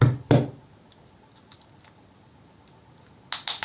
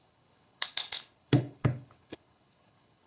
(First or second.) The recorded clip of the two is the first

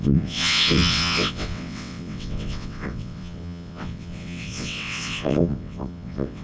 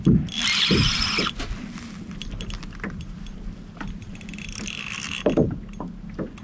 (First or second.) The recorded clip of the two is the second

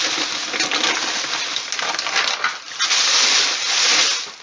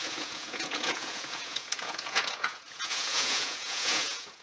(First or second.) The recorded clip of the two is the first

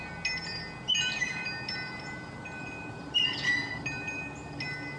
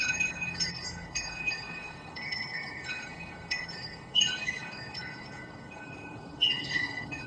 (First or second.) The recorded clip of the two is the first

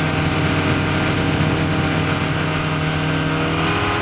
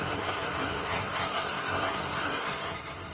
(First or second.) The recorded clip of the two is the first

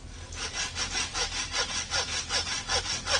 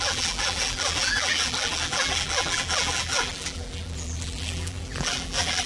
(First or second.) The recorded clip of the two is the first